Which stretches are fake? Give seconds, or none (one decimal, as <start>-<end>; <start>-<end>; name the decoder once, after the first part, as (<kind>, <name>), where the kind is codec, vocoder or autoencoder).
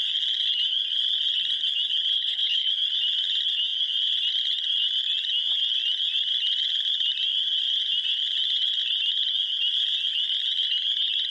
2.1-2.7 (codec, HILCodec)